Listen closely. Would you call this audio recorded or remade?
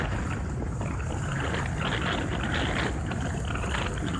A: recorded